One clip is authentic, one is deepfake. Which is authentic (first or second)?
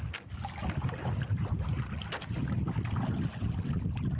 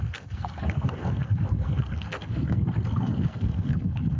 first